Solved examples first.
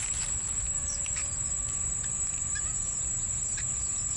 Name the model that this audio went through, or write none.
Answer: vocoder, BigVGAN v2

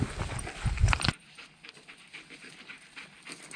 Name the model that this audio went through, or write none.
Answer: none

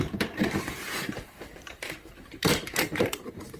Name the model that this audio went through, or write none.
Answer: vocoder, BigVGAN v2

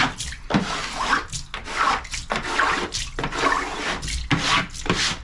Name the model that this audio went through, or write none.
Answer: none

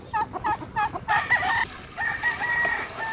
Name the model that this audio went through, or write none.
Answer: none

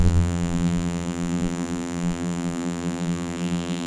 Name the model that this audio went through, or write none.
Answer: vocoder, BigVGAN v2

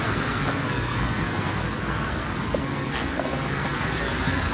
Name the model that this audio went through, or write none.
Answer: codec, SNAC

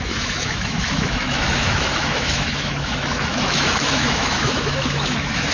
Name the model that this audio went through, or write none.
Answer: autoencoder, DAC-VAE